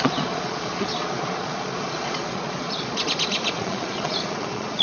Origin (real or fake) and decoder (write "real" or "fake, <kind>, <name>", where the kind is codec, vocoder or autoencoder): fake, vocoder, Vocos